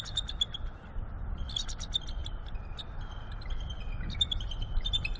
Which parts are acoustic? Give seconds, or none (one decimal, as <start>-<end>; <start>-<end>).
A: 0.0-5.2